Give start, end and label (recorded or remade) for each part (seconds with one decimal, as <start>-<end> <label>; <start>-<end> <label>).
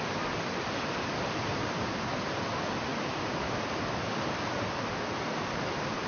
0.0-6.1 recorded